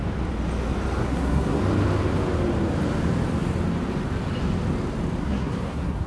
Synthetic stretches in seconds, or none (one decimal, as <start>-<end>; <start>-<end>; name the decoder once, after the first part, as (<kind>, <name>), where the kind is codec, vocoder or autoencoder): 1.0-1.6 (codec, SNAC); 5.2-6.1